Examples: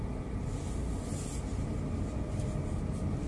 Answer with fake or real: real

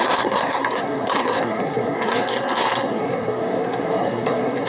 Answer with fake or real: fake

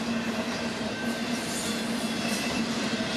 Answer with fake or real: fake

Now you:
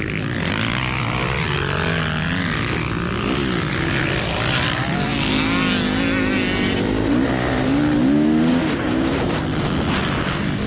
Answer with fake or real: real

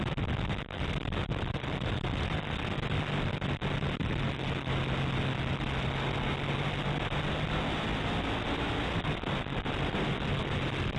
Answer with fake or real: real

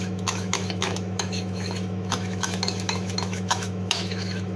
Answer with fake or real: fake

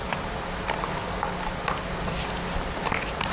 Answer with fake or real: real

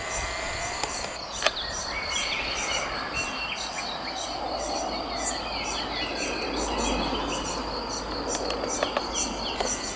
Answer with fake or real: real